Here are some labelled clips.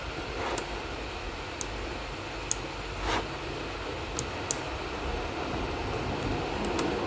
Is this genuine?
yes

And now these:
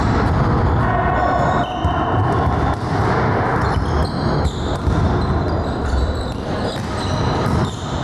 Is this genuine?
yes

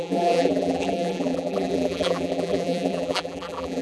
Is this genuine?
no